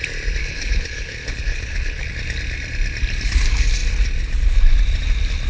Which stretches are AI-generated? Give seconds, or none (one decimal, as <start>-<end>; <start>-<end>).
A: 0.4-2.1